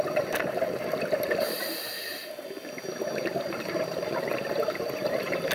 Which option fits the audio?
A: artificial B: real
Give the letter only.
A